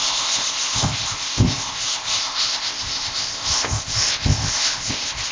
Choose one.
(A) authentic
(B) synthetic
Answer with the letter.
B